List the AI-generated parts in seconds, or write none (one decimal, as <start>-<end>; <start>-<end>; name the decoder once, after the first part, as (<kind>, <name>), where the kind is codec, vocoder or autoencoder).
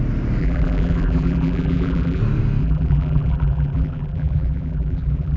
0.4-2.2 (vocoder, BigVGAN v2); 2.6-5.4